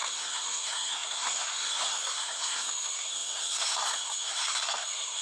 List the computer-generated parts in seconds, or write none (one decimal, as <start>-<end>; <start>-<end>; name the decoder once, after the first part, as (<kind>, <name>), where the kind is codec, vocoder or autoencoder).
0.0-5.2 (codec, SNAC)